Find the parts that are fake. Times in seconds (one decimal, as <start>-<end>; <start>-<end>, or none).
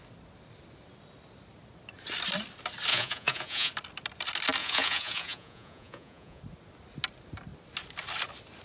2.9-3.7; 4.6-6.4